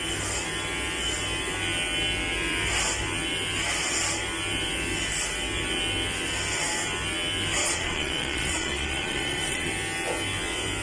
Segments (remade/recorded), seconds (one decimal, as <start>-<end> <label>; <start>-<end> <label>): 0.0-7.6 recorded; 7.6-9.7 remade; 9.7-10.8 recorded